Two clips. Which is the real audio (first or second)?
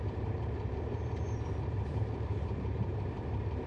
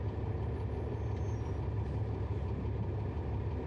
second